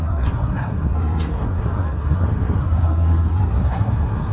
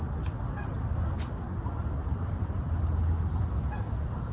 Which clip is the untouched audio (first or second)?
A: second